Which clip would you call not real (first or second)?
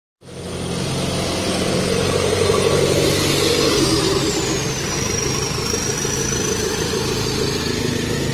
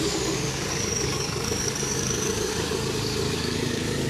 second